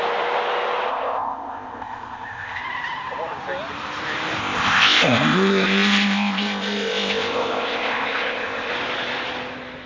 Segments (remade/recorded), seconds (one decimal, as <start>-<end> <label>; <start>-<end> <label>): 0.0-0.9 recorded; 0.9-2.6 remade; 2.6-4.4 recorded; 4.4-8.7 remade; 8.7-9.9 recorded